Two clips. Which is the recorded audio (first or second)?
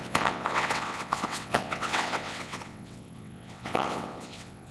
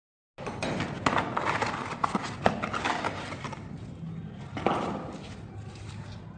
second